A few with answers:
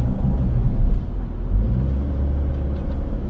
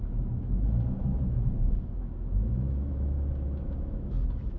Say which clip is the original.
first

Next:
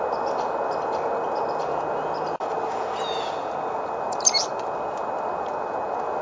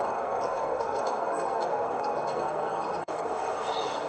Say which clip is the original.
first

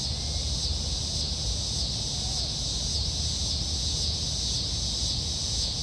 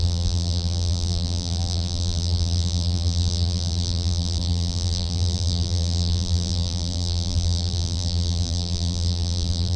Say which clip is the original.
first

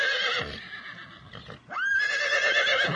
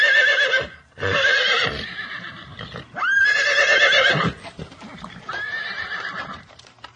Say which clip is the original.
first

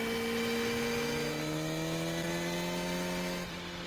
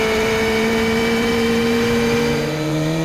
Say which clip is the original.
first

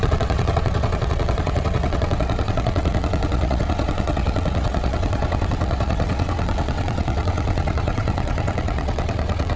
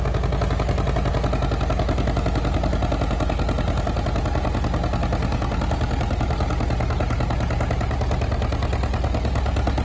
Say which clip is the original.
second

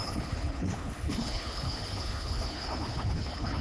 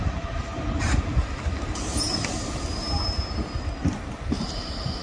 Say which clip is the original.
second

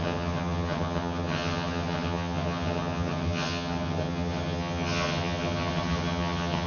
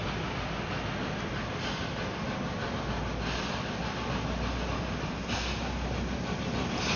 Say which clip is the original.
second